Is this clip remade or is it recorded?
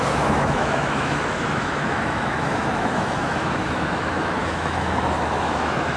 remade